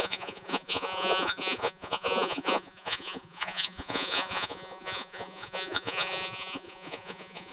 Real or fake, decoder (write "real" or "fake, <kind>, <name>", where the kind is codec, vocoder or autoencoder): fake, vocoder, Vocos